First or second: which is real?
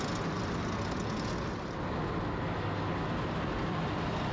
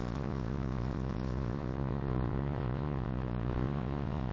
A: first